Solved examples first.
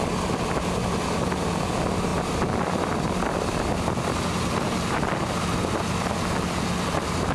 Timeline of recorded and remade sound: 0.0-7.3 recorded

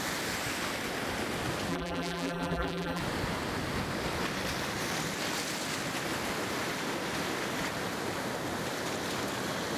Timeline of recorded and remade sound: 0.0-1.7 recorded; 1.7-3.0 remade; 3.0-9.8 recorded